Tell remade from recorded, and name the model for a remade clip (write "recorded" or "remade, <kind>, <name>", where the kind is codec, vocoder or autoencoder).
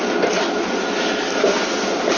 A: recorded